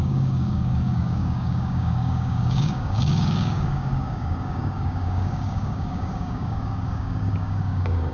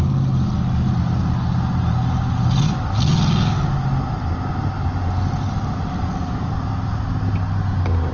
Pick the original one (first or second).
second